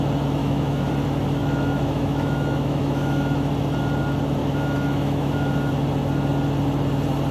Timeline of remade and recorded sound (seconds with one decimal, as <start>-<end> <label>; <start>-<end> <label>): 0.0-0.4 recorded; 0.4-0.9 remade; 0.9-1.4 recorded; 1.4-3.5 remade; 3.5-4.4 recorded; 4.4-5.7 remade; 5.7-7.3 recorded